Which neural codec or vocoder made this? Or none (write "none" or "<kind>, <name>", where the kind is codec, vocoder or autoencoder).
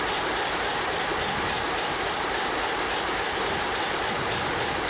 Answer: none